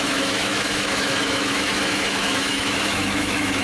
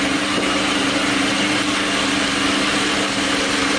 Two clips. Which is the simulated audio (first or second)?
first